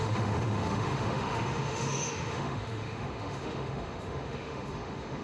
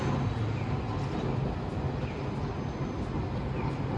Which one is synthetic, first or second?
first